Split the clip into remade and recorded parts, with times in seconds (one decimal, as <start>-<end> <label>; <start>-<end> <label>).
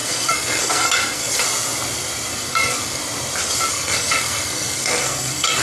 0.0-1.4 remade; 1.4-2.3 recorded; 2.3-3.0 remade; 3.0-3.7 recorded; 3.7-5.6 remade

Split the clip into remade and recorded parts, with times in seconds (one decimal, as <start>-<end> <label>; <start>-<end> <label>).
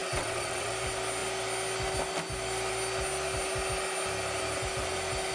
0.0-0.7 remade; 0.7-5.3 recorded